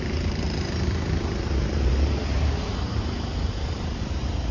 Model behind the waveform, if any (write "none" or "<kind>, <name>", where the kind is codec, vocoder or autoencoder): vocoder, BigVGAN v2